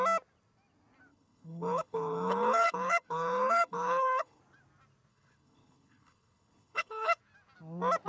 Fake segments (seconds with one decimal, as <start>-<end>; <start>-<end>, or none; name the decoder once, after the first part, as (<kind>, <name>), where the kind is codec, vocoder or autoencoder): 1.1-4.4 (codec, HILCodec); 5.1-7.2